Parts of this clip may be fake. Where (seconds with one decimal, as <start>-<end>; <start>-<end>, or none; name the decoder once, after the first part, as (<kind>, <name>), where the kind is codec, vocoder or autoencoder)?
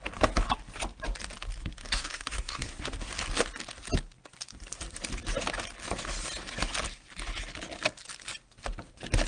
1.8-3.1 (codec, SNAC)